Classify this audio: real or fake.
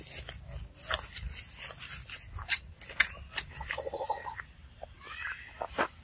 real